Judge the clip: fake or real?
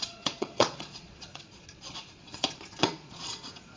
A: fake